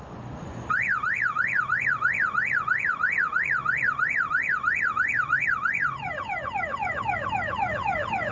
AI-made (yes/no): yes